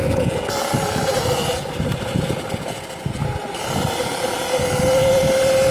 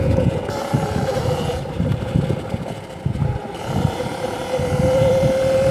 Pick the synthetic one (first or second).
second